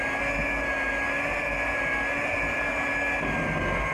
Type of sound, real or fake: real